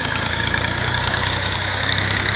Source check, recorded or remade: remade